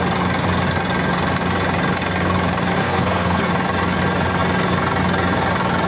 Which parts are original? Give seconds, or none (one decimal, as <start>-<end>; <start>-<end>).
0.0-2.8; 3.5-5.9